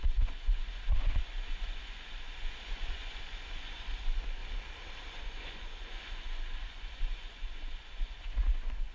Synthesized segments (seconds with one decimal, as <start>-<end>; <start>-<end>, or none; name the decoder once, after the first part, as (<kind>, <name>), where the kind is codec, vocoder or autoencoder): 0.0-4.4 (vocoder, Vocos); 5.1-8.9